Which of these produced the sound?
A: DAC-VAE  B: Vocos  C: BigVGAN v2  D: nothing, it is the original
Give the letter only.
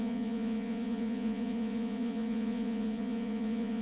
B